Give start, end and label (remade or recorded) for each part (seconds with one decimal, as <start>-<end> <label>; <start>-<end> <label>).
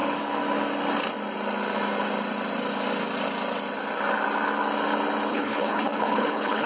0.0-5.3 recorded; 5.3-6.7 remade